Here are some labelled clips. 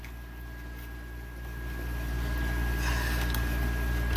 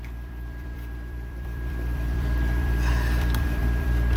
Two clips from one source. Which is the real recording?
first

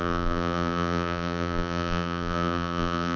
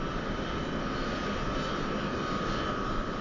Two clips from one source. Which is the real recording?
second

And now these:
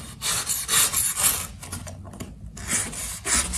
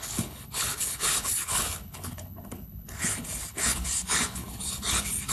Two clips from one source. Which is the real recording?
first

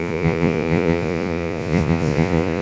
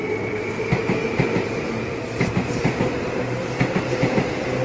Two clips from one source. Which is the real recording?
second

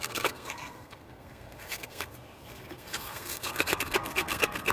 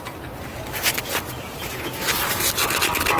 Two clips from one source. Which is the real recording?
second